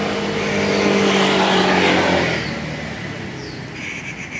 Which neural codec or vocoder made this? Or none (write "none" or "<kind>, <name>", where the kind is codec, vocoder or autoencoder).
none